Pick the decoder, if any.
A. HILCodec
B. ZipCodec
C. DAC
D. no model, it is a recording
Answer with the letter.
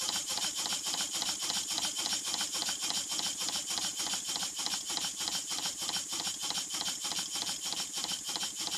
D